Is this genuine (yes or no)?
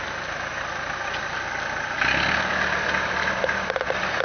yes